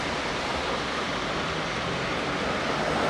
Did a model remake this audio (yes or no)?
no